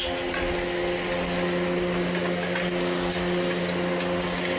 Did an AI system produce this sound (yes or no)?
no